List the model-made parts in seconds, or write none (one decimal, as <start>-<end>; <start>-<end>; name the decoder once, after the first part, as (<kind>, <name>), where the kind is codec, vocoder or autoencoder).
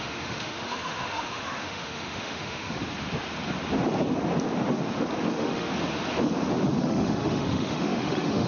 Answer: 0.0-2.8 (autoencoder, DAC-VAE); 5.3-5.7; 6.8-8.5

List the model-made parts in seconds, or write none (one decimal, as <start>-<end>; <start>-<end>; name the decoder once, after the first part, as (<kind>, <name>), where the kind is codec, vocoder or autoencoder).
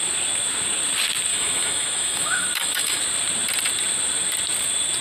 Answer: 1.3-3.0 (autoencoder, DAC-VAE)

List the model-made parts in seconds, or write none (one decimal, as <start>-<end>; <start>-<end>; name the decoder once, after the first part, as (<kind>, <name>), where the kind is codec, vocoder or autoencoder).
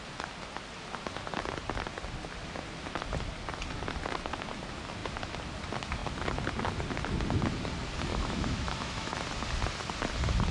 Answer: 8.1-9.2 (autoencoder, DAC-VAE)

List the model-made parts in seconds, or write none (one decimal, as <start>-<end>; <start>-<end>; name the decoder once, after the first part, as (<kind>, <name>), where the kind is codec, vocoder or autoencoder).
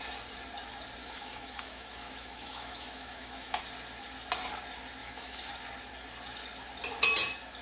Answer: 1.0-3.6 (autoencoder, DAC-VAE); 5.0-5.5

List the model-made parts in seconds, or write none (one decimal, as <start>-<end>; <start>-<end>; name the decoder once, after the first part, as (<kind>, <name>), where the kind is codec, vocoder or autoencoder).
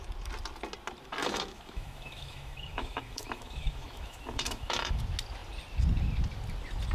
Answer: 1.2-4.9 (autoencoder, DAC-VAE)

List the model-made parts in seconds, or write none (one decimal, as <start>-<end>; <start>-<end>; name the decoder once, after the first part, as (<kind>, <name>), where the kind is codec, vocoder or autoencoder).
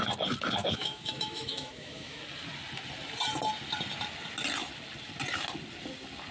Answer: 0.6-2.2 (autoencoder, DAC-VAE)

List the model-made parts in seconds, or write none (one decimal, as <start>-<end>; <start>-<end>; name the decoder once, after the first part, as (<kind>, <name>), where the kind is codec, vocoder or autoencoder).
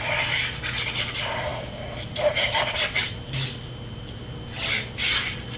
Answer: none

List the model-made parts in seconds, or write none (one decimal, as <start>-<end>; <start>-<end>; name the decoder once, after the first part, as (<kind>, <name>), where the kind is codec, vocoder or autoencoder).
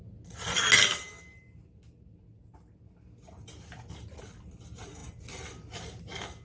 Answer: none